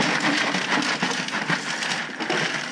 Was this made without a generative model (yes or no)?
yes